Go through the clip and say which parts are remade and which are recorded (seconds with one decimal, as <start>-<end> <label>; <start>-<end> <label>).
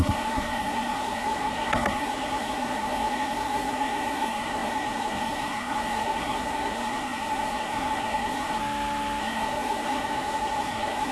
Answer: 0.0-8.6 remade; 8.6-9.2 recorded; 9.2-11.1 remade